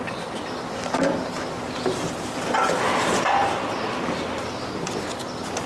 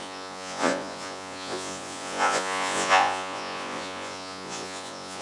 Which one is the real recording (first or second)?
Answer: first